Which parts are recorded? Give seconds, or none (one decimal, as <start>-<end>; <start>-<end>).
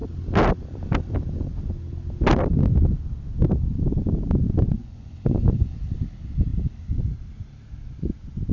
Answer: 0.0-4.8; 5.8-8.5